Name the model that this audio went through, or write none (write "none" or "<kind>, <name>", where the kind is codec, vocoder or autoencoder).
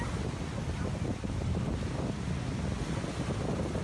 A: none